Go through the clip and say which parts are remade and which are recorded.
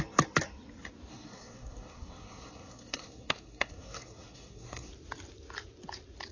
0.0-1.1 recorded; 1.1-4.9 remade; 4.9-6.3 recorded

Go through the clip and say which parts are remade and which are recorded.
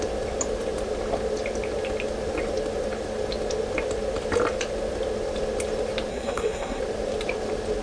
0.0-6.1 recorded; 6.1-6.8 remade; 6.8-7.8 recorded